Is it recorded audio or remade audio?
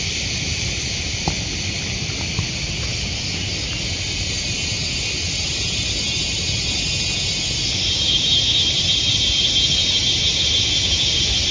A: recorded